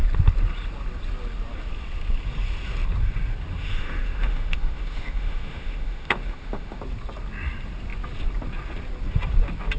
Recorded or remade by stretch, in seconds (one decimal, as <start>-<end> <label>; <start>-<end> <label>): 0.0-3.5 recorded; 3.5-6.8 remade; 6.8-9.8 recorded